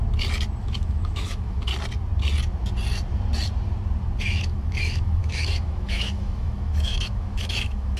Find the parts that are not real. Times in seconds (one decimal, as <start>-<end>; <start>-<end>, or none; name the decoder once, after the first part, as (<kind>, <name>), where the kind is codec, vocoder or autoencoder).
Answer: 0.6-1.7 (autoencoder, DAC-VAE); 4.2-8.0